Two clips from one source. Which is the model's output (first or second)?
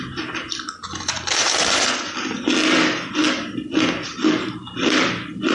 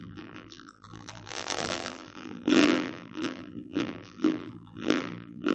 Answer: second